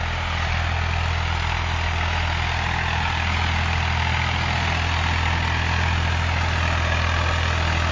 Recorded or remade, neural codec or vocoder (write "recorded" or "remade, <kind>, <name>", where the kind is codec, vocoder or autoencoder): recorded